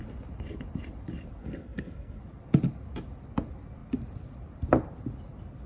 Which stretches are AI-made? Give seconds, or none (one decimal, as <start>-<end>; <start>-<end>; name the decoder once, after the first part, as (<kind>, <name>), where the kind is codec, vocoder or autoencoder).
1.4-2.2 (codec, SNAC)